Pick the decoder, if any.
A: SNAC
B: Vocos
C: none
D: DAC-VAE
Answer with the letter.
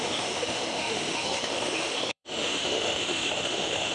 D